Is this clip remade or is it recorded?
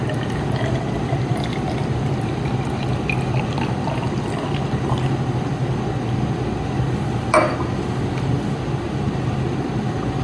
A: recorded